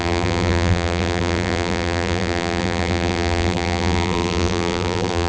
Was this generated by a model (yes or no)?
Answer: yes